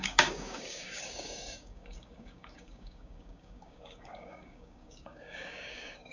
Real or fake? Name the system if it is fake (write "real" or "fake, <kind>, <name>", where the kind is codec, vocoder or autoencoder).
fake, codec, DAC